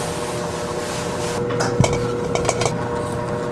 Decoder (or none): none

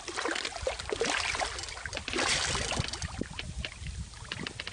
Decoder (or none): none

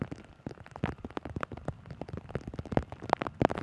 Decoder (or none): none